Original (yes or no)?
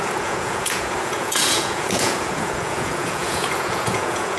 no